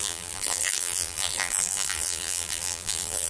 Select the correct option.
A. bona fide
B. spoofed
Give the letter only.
B